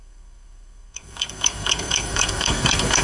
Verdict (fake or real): fake